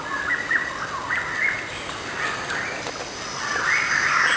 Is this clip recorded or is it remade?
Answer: recorded